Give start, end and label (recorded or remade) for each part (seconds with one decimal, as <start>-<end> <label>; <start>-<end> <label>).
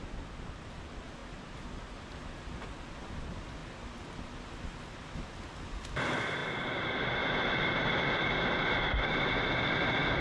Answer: 0.0-10.2 recorded